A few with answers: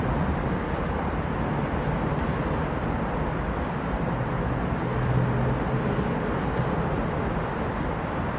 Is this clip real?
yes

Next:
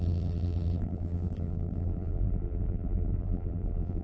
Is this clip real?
no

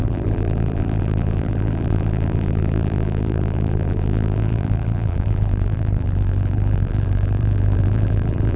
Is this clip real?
no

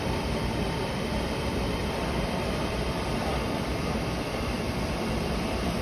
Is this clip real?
no